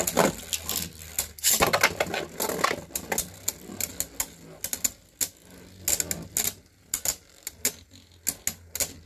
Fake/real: real